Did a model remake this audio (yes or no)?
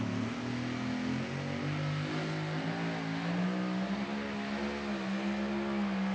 no